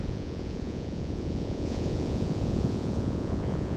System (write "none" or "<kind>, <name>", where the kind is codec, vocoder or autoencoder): vocoder, Vocos